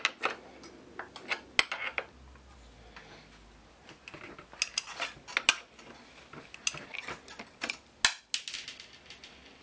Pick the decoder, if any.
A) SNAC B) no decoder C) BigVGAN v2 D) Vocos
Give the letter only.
B